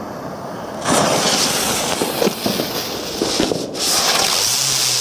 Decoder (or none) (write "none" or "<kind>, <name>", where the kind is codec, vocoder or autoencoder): none